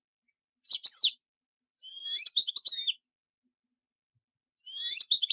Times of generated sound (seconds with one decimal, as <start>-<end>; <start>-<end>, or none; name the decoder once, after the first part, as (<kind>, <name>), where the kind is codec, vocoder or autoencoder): none